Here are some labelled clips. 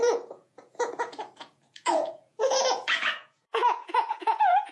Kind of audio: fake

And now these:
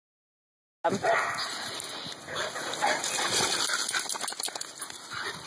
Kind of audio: real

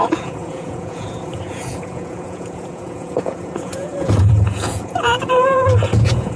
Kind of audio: fake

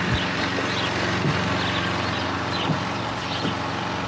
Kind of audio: real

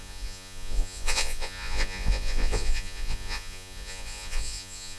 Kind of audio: fake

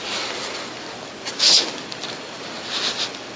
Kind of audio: real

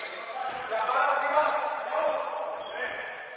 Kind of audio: fake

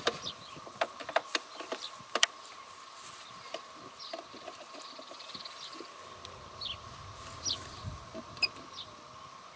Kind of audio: real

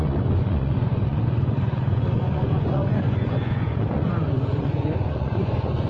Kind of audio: fake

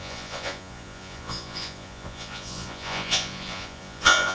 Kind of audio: fake